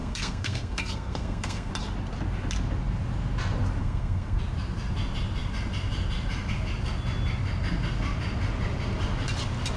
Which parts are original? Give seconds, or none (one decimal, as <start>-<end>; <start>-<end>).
1.7-3.8; 4.4-9.8